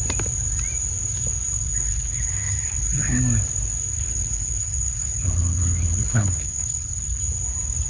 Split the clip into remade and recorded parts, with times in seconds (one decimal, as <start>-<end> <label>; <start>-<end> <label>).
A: 0.0-1.6 recorded; 1.6-3.2 remade; 3.2-3.9 recorded; 3.9-7.2 remade; 7.2-7.9 recorded